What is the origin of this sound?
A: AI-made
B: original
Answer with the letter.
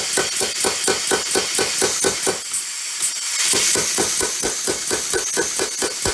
B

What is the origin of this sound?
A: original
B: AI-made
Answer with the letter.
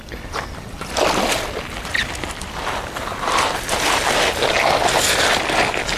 A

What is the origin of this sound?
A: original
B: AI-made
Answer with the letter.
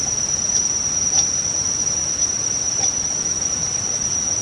A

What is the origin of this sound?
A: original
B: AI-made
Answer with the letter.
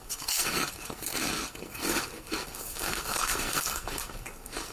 B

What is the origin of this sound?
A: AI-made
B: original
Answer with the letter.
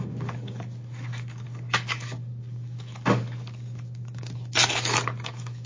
A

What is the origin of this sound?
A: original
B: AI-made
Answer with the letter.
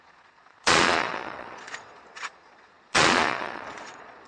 B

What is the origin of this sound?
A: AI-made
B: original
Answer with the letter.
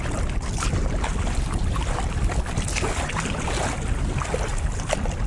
B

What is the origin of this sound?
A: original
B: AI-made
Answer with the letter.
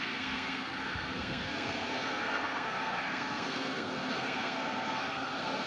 B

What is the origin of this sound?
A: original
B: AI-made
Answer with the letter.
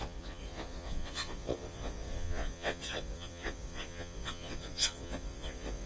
B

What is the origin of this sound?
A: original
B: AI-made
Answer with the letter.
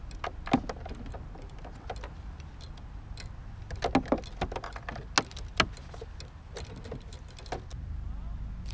A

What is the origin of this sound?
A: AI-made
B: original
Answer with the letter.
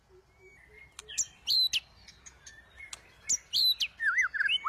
B